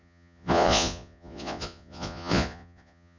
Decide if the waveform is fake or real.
fake